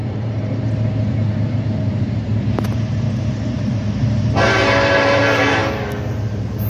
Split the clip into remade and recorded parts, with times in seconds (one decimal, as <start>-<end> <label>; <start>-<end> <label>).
0.0-5.6 remade; 5.6-6.1 recorded; 6.1-6.7 remade